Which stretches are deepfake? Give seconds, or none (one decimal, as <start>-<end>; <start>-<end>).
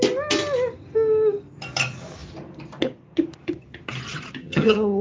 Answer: 4.4-5.0